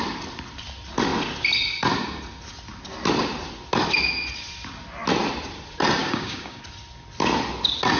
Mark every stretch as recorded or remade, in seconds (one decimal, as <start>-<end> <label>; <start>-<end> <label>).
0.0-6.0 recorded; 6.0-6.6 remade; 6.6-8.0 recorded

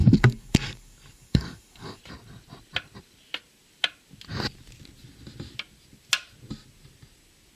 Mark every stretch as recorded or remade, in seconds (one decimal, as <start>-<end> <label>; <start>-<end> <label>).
0.0-2.0 remade; 2.0-7.6 recorded

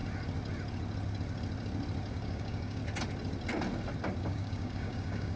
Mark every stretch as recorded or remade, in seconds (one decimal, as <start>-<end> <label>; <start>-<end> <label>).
0.0-2.1 recorded; 2.1-2.8 remade; 2.8-4.2 recorded; 4.2-5.4 remade

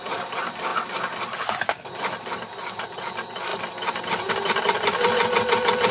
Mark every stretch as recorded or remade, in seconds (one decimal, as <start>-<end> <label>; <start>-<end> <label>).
0.0-5.9 recorded

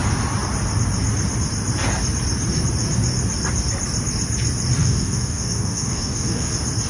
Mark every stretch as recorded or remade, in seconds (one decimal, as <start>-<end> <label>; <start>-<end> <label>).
0.0-4.8 recorded; 4.8-6.5 remade; 6.5-6.9 recorded

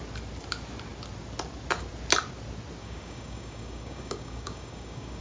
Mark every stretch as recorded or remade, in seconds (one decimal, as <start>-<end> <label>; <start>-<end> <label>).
0.0-2.8 recorded; 2.8-5.2 remade